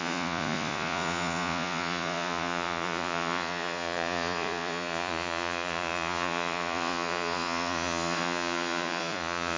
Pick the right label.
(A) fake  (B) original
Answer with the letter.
A